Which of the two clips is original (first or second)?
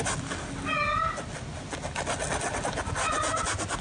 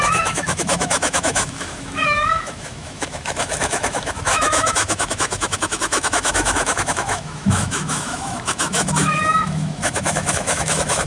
first